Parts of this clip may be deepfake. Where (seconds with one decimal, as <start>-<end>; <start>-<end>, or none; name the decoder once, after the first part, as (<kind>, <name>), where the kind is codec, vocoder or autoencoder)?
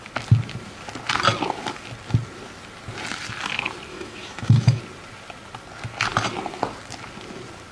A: 3.9-4.8 (autoencoder, DAC-VAE)